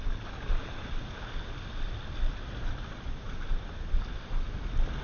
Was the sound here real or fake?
real